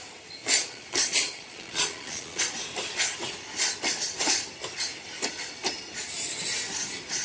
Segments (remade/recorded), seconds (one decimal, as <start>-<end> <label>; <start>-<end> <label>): 0.0-0.4 recorded; 0.4-2.4 remade; 2.4-7.2 recorded